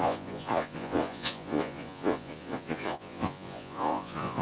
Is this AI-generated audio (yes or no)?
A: yes